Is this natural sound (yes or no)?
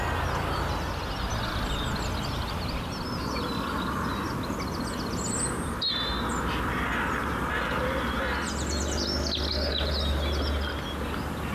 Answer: yes